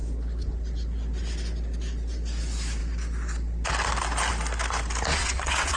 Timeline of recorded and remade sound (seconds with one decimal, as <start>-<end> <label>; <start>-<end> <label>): 0.0-5.1 recorded; 5.1-5.8 remade